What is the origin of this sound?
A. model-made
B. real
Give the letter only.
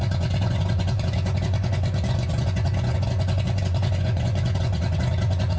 A